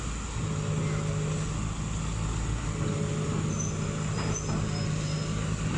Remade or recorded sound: recorded